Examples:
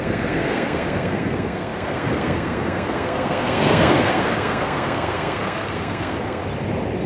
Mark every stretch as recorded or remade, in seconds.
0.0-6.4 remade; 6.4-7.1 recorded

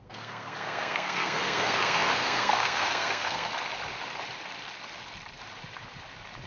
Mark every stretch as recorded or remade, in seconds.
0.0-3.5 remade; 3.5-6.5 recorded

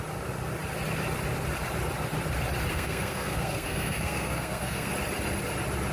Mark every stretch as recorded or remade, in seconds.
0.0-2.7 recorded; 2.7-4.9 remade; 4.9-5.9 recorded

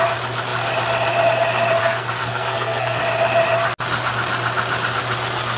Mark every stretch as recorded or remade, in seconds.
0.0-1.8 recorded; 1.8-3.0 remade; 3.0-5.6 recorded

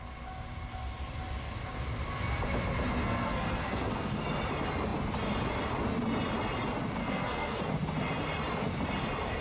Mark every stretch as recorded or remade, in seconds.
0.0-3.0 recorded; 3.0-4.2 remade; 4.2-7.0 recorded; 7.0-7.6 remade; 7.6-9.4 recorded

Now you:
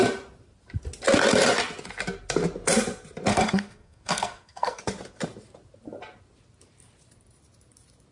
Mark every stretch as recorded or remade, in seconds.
0.0-3.3 recorded; 3.3-4.8 remade; 4.8-8.1 recorded

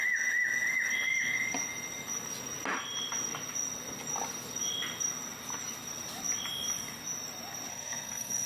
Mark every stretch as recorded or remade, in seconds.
0.0-7.7 recorded; 7.7-8.5 remade